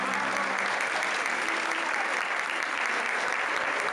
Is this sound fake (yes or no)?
no